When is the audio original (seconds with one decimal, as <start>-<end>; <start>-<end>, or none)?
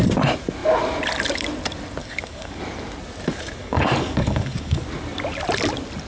0.0-2.0; 2.6-3.6; 4.8-6.1